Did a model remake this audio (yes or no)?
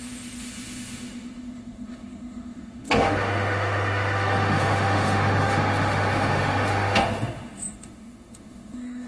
yes